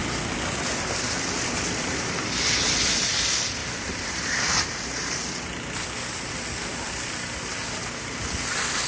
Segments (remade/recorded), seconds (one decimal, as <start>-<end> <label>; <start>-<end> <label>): 0.0-3.6 recorded; 3.6-4.6 remade; 4.6-8.9 recorded